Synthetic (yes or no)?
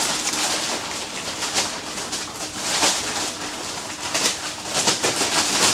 no